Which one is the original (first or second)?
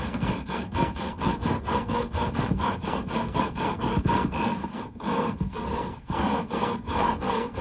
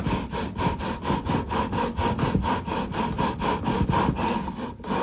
second